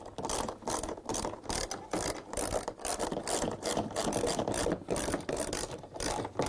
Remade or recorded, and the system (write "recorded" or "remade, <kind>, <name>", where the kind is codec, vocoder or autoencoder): recorded